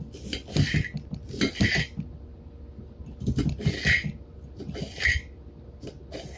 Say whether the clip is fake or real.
real